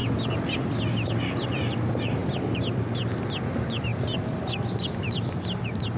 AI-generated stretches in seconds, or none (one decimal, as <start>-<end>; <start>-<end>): 0.0-6.0